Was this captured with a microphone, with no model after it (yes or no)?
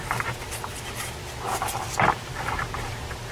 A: yes